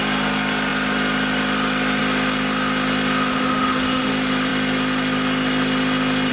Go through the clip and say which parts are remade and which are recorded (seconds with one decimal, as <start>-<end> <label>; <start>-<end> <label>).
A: 0.0-3.3 recorded; 3.3-4.1 remade; 4.1-6.3 recorded